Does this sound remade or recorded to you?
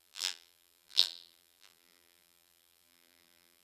remade